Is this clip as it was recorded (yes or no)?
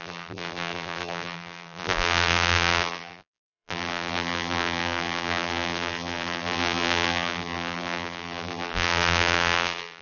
no